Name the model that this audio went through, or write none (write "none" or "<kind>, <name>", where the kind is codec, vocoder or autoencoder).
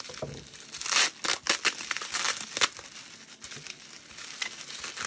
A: none